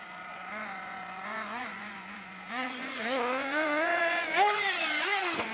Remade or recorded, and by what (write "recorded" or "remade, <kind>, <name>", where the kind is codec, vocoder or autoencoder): remade, vocoder, Vocos